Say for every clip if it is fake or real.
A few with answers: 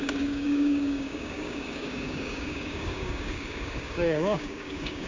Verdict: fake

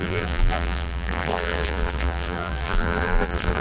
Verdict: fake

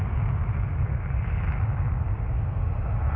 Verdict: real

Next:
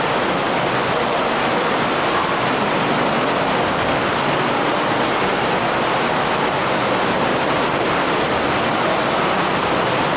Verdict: real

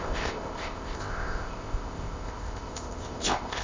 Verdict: fake